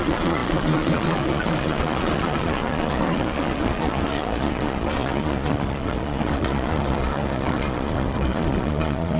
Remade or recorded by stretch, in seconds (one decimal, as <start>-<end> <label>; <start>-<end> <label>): 0.0-9.2 remade